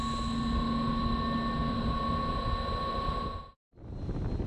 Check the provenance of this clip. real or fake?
real